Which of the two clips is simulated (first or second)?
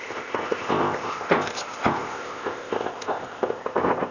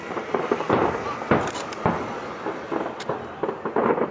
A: first